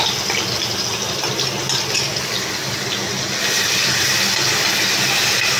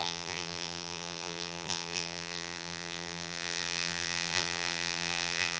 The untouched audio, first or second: first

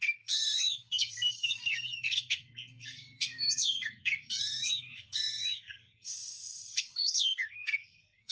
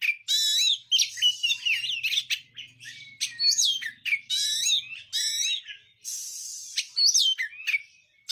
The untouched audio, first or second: second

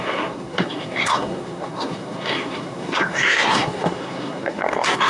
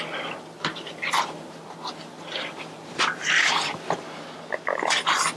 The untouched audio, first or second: second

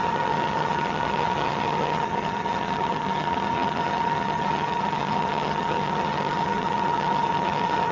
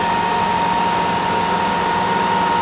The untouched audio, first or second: second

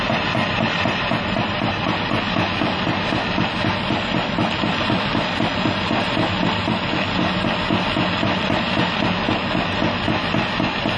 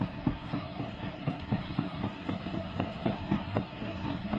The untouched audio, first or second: first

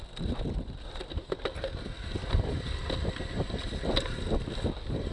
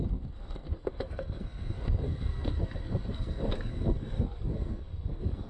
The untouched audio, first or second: first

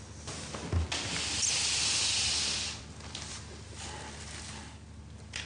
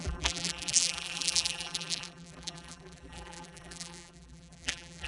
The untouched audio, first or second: first